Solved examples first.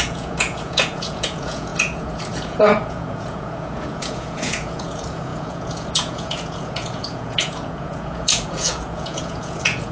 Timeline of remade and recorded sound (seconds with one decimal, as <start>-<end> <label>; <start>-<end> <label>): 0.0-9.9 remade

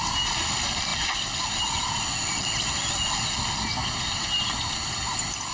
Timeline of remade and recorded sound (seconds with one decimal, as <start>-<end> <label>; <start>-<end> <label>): 0.0-5.5 recorded

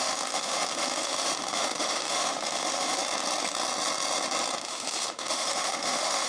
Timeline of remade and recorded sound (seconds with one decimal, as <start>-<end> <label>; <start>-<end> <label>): 0.0-3.0 remade; 3.0-4.6 recorded; 4.6-6.3 remade

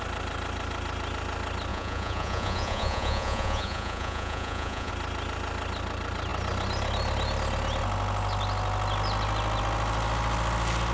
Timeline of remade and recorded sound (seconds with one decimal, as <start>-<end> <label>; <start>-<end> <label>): 0.0-1.7 recorded; 1.7-4.9 remade; 4.9-10.9 recorded

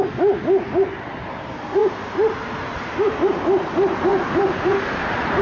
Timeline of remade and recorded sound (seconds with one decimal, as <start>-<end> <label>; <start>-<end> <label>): 0.0-4.1 recorded; 4.1-4.7 remade; 4.7-5.4 recorded

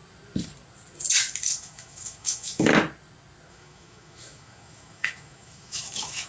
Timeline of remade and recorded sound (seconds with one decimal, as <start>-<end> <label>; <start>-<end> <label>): 0.0-1.4 recorded; 1.4-2.7 remade; 2.7-3.5 recorded; 3.5-6.3 remade

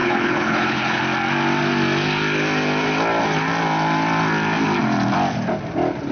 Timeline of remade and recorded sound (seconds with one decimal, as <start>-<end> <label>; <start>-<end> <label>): 0.0-1.0 remade; 1.0-6.1 recorded